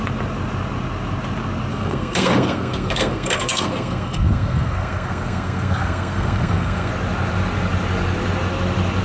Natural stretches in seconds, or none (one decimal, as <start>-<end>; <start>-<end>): 0.0-1.7; 6.9-9.0